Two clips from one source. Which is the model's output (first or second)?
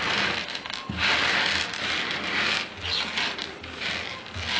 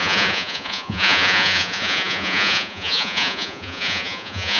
second